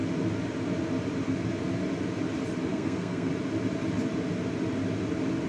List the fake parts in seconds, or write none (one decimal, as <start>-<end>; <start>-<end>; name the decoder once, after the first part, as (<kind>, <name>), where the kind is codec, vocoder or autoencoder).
2.7-3.3 (codec, SNAC)